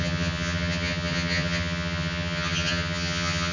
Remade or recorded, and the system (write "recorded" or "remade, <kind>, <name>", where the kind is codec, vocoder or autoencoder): remade, vocoder, HiFi-GAN